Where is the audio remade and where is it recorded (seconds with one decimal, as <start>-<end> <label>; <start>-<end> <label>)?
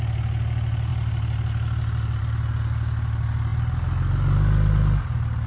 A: 0.0-5.5 recorded